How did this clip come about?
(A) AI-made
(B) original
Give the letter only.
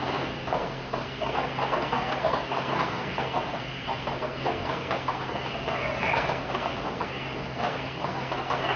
A